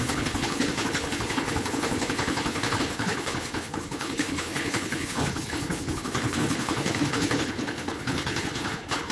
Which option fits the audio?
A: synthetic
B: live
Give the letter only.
A